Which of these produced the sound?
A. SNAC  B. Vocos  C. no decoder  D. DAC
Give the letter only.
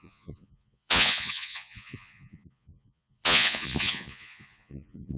B